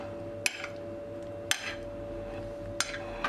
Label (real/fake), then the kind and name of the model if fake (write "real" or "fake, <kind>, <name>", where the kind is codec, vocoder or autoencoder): real